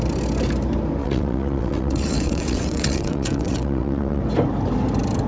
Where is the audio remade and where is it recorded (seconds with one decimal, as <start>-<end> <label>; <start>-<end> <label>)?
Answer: 0.0-1.0 recorded; 1.0-4.2 remade; 4.2-5.3 recorded